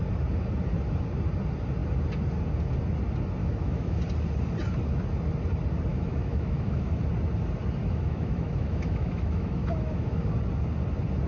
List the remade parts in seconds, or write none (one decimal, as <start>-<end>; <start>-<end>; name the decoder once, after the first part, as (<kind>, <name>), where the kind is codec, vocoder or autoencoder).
3.4-4.0 (autoencoder, DAC-VAE); 5.9-7.0; 7.8-10.3